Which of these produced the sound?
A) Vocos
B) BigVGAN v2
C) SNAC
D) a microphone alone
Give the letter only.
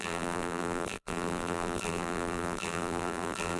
B